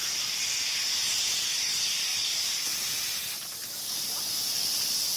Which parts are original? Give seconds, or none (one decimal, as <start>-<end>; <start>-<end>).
0.0-2.1